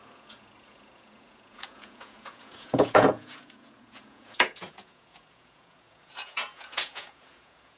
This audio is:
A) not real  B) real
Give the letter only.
A